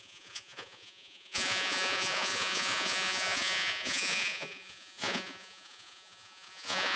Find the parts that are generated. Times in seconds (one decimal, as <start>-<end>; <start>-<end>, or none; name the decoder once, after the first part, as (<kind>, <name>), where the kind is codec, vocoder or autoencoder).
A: 0.0-7.0 (vocoder, Vocos)